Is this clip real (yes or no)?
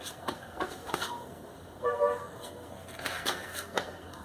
no